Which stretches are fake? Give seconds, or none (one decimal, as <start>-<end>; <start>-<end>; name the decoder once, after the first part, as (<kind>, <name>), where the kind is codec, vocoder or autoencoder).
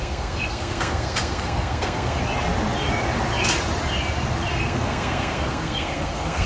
0.0-2.2 (codec, SNAC); 4.5-6.5